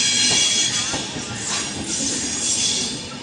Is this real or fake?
real